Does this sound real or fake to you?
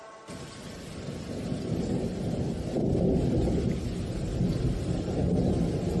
real